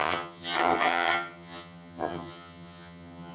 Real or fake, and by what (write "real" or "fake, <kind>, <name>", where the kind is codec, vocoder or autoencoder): fake, vocoder, HiFi-GAN